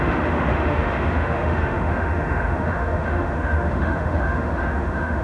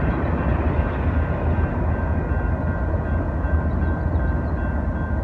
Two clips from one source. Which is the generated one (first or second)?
first